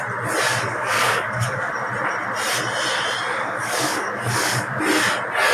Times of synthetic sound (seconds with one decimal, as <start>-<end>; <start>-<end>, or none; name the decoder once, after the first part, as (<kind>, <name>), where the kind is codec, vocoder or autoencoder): 0.7-1.7 (codec, DAC); 3.3-4.8